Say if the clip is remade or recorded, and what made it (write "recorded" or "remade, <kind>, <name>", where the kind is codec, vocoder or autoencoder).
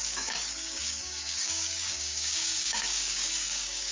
remade, codec, DAC